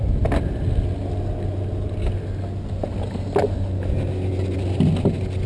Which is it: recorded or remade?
recorded